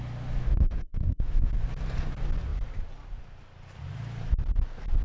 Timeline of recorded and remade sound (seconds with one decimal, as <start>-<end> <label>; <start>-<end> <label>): 0.0-0.4 recorded; 0.4-1.5 remade; 1.5-5.0 recorded